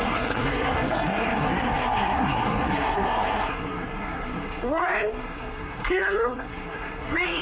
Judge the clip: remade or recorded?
remade